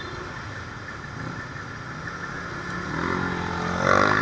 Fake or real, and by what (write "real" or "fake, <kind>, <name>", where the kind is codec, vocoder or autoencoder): real